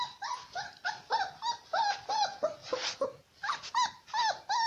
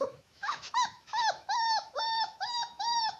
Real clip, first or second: first